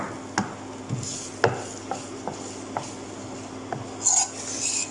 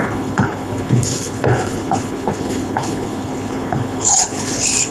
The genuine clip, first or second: first